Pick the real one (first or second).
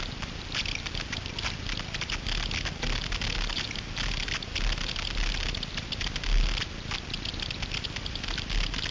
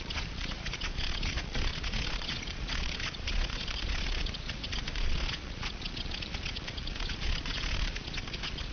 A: first